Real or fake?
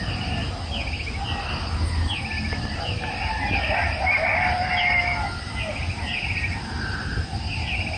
real